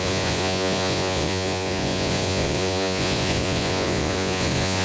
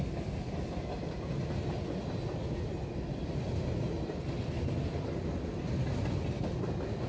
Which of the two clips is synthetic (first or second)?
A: first